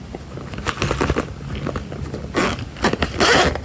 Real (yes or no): yes